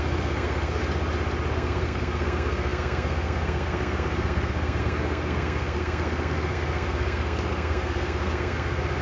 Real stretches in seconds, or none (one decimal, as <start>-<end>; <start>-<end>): 0.8-1.5